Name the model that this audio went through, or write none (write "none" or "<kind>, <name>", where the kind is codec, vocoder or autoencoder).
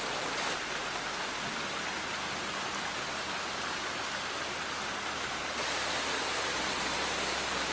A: none